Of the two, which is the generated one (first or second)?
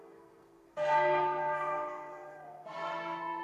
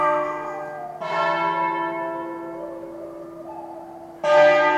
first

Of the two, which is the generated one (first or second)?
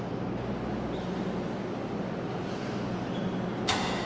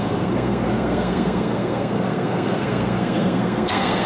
second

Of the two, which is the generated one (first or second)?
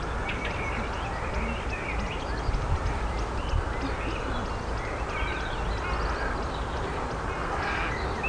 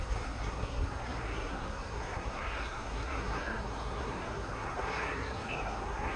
second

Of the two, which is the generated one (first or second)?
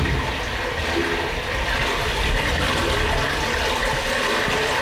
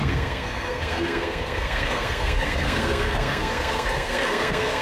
second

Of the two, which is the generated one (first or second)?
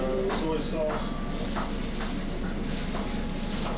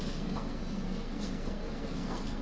second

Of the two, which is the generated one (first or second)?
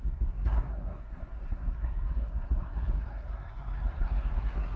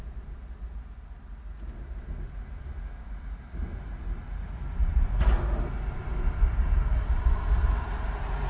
first